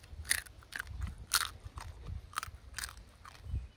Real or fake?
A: real